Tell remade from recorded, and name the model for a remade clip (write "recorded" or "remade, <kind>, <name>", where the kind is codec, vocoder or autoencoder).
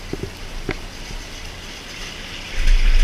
recorded